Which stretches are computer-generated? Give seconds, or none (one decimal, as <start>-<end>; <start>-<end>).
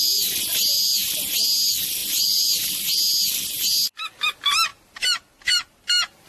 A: 2.0-2.8; 4.7-6.3